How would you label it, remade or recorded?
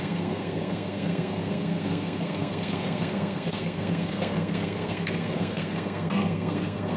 remade